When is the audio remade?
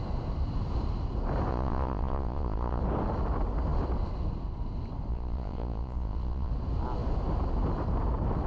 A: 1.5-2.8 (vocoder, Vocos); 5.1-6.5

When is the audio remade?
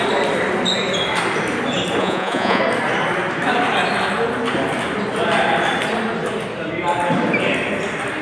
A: 2.0-2.6 (vocoder, Vocos)